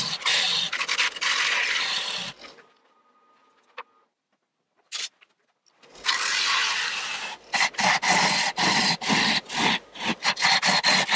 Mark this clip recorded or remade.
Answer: recorded